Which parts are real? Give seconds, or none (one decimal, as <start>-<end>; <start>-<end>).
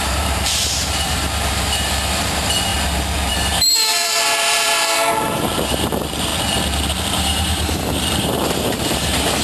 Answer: 2.7-3.3; 6.3-7.1